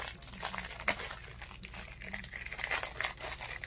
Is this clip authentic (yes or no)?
yes